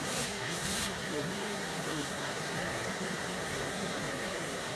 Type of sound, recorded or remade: remade